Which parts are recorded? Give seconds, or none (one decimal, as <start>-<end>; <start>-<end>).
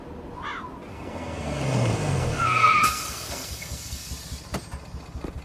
0.0-0.9; 4.1-5.4